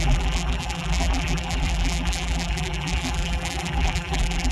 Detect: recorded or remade remade